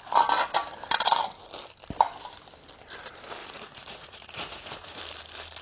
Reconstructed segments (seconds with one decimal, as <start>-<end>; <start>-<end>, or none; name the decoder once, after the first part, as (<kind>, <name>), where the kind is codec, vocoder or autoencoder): 3.4-5.0 (vocoder, Vocos)